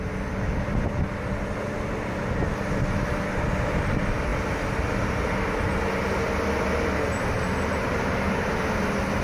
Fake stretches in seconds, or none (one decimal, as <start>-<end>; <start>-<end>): none